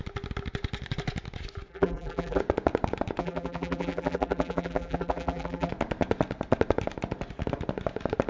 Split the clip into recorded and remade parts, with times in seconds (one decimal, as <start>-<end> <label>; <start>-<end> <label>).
0.0-1.7 recorded; 1.7-2.4 remade; 2.4-3.2 recorded; 3.2-5.7 remade; 5.7-8.3 recorded